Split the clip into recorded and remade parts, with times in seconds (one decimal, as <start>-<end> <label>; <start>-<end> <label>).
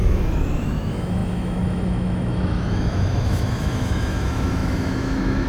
0.0-5.5 remade